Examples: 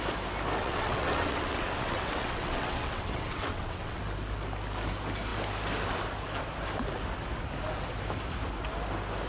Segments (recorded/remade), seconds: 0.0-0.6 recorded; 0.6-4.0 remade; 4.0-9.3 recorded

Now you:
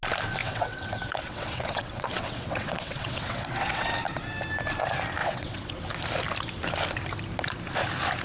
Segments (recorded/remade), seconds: 0.0-0.4 recorded; 0.4-3.9 remade; 3.9-5.2 recorded; 5.2-5.7 remade; 5.7-8.2 recorded

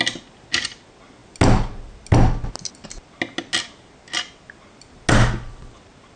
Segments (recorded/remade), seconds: 0.0-6.2 recorded

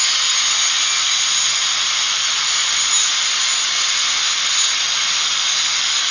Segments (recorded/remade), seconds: 0.0-6.1 recorded

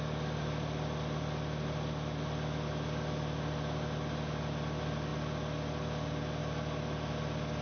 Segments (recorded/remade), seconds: 0.0-7.6 recorded

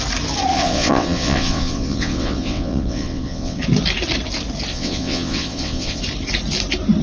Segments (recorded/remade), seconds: 0.0-0.5 recorded; 0.5-3.6 remade; 3.6-4.7 recorded; 4.7-6.0 remade; 6.0-7.0 recorded

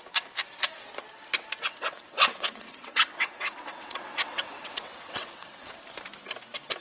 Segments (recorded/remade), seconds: 0.0-1.7 recorded; 1.7-5.8 remade; 5.8-6.8 recorded